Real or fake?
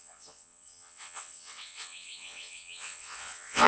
fake